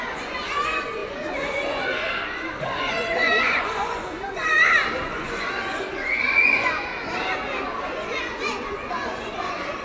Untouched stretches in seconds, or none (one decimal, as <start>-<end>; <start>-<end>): 6.9-7.8